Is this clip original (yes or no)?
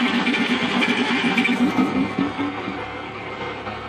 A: no